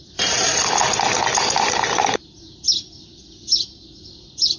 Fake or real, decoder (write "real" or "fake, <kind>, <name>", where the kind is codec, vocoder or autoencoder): real